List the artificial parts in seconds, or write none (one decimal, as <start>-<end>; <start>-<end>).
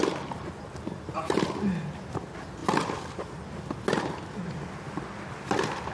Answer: none